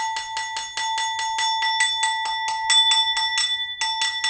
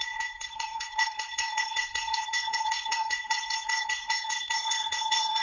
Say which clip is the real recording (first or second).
first